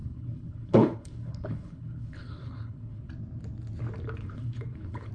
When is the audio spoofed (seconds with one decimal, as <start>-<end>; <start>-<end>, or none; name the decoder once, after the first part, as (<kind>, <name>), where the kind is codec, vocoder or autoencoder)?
0.0-3.1 (codec, HILCodec); 4.2-5.1